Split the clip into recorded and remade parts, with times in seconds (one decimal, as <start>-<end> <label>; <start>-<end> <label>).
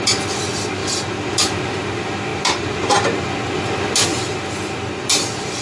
0.0-5.6 recorded